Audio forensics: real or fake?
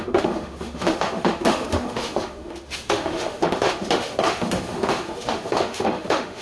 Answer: fake